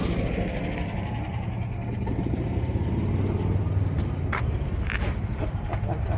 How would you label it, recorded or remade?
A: recorded